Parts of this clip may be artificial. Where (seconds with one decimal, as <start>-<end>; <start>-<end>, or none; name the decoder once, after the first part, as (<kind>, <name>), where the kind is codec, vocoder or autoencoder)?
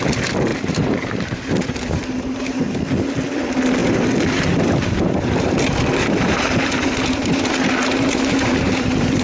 0.5-2.8 (vocoder, BigVGAN v2); 3.8-9.2